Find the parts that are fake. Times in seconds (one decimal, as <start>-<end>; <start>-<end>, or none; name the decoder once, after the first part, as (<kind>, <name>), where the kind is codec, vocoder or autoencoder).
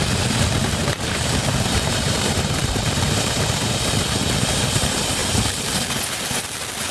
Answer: 0.6-4.0 (vocoder, BigVGAN v2); 5.2-5.8